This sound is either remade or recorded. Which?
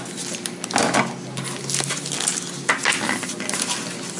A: recorded